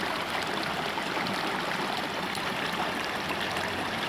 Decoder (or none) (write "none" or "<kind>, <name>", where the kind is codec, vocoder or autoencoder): none